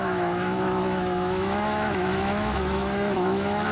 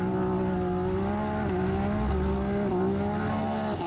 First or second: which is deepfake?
first